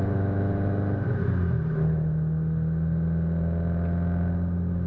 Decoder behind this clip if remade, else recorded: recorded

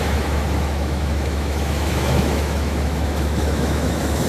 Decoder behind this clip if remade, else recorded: remade, autoencoder, DAC-VAE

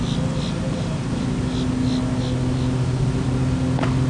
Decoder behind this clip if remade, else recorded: recorded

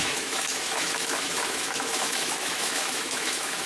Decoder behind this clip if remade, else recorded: remade, autoencoder, DAC-VAE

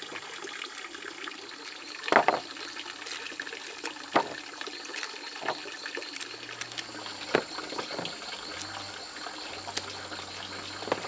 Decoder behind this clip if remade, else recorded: recorded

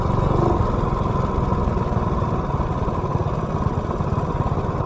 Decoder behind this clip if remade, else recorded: recorded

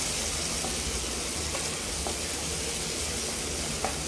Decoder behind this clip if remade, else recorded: recorded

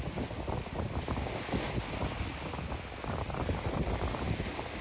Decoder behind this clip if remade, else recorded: recorded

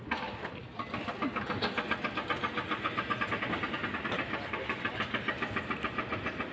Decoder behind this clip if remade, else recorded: recorded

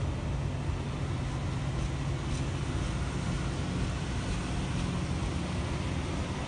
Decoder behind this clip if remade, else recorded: recorded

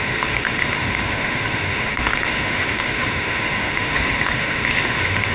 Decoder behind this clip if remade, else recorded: remade, autoencoder, DAC-VAE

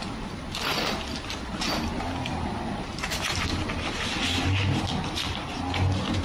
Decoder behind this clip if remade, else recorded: recorded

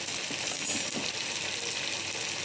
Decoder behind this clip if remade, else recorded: recorded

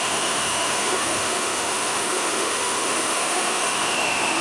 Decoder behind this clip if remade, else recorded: remade, autoencoder, DAC-VAE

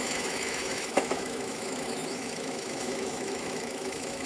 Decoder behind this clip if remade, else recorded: remade, autoencoder, DAC-VAE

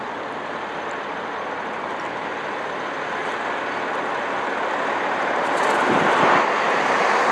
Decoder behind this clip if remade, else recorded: recorded